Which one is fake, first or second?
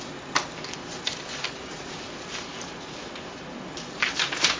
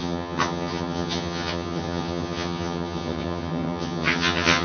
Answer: second